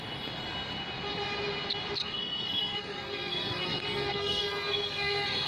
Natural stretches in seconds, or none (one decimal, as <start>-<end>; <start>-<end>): 0.0-2.0